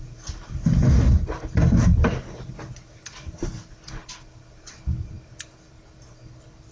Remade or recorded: recorded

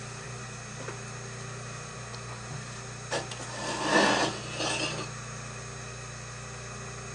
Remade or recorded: recorded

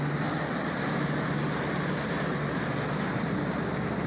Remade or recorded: recorded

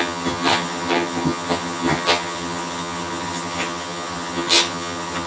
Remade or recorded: remade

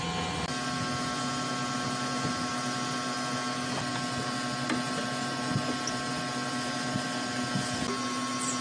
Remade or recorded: recorded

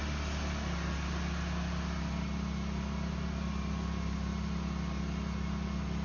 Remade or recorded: recorded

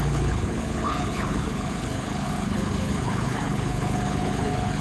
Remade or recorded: remade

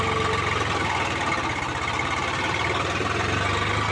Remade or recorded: recorded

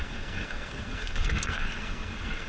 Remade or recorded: remade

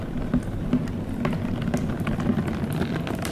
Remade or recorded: recorded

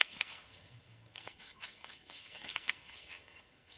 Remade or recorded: remade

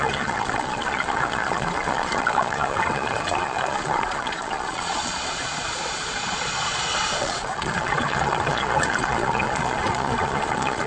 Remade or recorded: remade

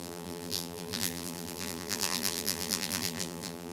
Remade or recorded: remade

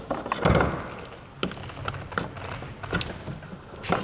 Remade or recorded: recorded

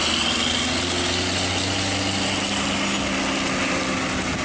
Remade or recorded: recorded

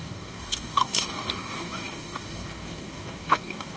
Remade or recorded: remade